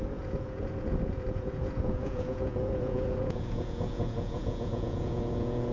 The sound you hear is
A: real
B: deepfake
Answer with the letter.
B